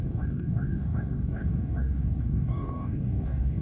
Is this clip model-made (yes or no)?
yes